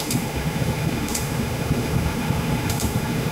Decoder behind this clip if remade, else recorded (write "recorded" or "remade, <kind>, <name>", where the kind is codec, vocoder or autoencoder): remade, autoencoder, DAC-VAE